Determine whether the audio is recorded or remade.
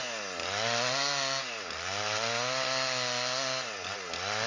recorded